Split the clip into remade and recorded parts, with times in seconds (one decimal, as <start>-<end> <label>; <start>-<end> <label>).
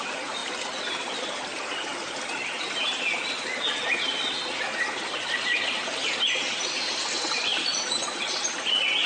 0.0-7.5 recorded; 7.5-8.3 remade; 8.3-9.1 recorded